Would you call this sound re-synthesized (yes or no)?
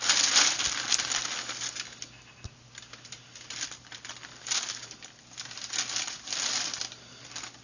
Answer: no